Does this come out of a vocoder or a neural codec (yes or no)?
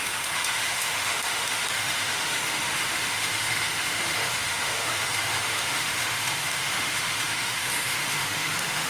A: yes